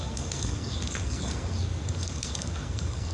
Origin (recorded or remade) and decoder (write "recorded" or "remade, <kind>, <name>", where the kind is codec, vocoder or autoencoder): remade, codec, SNAC